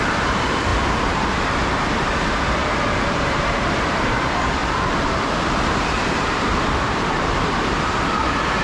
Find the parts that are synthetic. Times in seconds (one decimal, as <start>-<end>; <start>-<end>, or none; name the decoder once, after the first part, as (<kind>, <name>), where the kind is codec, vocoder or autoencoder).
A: 0.0-4.6 (vocoder, BigVGAN v2); 5.8-8.6